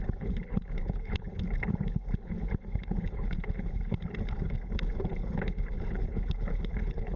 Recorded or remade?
remade